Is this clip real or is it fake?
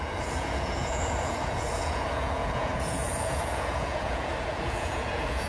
fake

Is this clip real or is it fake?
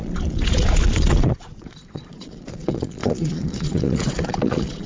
fake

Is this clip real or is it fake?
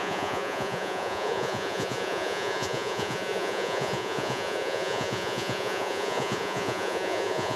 fake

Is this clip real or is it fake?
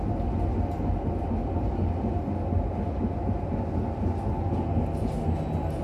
real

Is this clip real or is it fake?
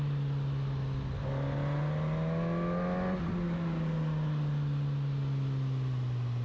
real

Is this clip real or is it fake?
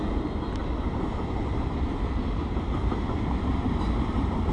real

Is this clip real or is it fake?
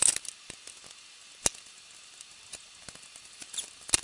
real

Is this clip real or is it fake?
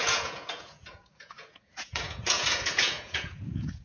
fake